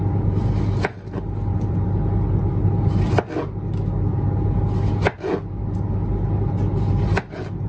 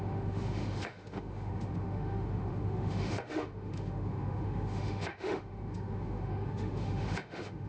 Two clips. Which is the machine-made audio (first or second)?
second